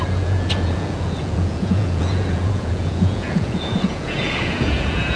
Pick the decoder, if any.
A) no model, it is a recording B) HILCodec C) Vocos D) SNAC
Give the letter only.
C